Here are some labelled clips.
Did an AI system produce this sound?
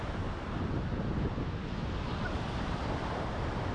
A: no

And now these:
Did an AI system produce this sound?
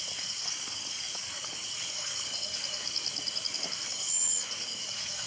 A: yes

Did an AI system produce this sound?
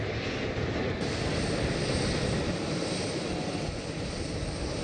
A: no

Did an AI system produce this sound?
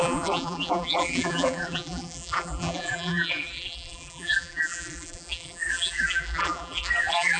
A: yes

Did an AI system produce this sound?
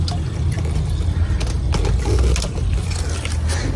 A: no